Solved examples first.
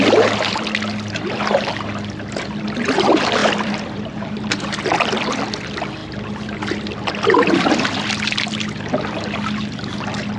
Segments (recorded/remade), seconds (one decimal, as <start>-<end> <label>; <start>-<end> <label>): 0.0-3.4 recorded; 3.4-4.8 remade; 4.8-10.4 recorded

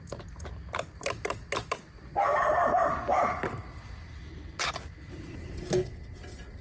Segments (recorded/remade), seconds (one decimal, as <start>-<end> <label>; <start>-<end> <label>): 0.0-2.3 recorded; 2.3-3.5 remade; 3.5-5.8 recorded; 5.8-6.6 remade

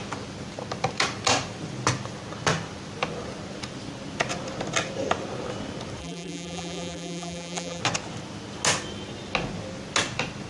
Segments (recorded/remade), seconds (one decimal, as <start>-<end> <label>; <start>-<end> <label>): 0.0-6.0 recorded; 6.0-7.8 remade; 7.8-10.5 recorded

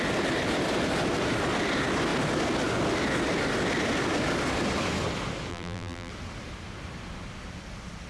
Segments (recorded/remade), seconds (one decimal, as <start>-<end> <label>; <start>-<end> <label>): 0.0-5.5 recorded; 5.5-6.1 remade; 6.1-8.1 recorded